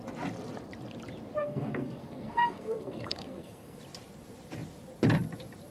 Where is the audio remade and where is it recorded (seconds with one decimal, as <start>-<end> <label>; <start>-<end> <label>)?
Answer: 0.0-1.4 recorded; 1.4-3.8 remade; 3.8-5.7 recorded